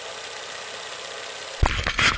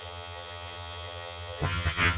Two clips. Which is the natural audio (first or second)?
first